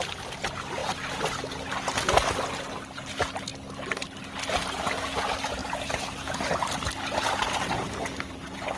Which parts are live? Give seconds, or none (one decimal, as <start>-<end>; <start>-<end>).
0.0-8.8